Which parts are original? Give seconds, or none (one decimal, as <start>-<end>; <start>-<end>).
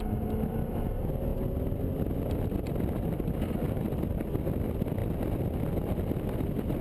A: 0.0-6.8